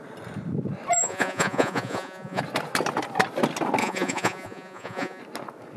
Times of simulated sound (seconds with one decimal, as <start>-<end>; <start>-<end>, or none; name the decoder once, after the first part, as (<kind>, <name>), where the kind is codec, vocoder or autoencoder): 1.0-2.4 (vocoder, Vocos); 3.8-5.2